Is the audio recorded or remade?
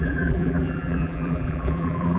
remade